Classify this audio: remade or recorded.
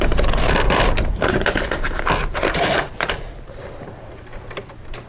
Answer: remade